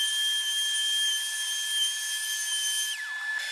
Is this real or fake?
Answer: real